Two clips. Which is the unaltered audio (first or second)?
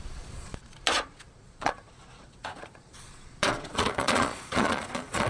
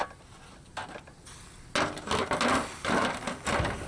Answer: second